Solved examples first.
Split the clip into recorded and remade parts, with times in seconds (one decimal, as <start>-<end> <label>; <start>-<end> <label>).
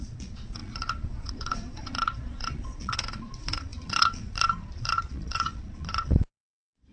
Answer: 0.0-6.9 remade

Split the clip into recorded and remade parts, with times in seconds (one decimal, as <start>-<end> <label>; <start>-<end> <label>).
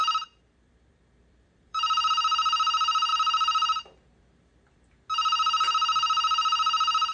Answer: 0.0-2.1 remade; 2.1-3.1 recorded; 3.1-5.1 remade; 5.1-7.1 recorded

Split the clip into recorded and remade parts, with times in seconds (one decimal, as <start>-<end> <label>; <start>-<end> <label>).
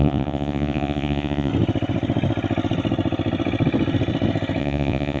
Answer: 0.0-1.5 remade; 1.5-4.6 recorded; 4.6-5.2 remade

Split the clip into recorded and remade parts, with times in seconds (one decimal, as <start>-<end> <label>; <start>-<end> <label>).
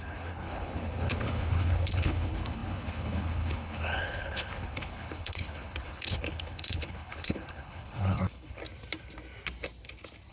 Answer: 0.0-8.6 remade; 8.6-10.3 recorded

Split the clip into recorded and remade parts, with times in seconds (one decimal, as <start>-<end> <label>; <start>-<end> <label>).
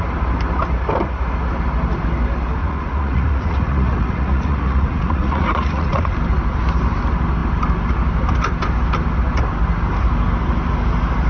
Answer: 0.0-2.6 recorded; 2.6-6.1 remade; 6.1-11.3 recorded